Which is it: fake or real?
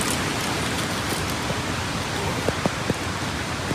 real